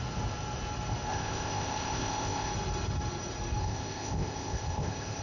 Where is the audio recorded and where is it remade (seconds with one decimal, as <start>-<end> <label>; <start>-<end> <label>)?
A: 0.0-1.1 recorded; 1.1-2.5 remade; 2.5-3.6 recorded; 3.6-5.2 remade